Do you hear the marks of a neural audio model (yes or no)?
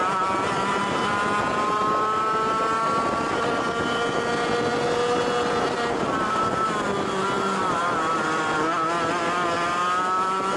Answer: no